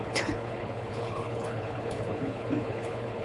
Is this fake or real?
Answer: fake